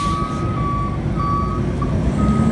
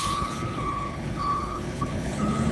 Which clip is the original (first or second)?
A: first